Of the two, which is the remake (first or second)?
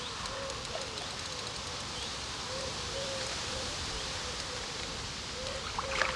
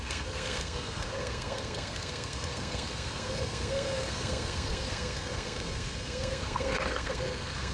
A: second